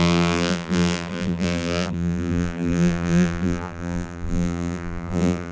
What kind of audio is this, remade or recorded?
remade